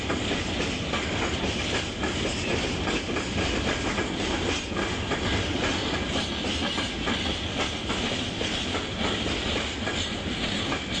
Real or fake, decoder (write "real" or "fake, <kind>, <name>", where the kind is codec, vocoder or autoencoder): real